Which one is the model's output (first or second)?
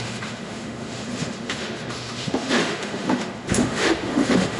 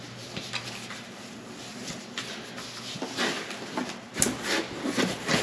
first